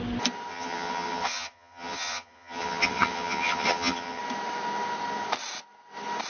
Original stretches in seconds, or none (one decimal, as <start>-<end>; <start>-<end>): 0.0-0.5; 4.2-6.3